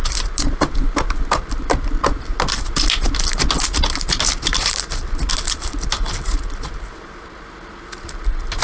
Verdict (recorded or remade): recorded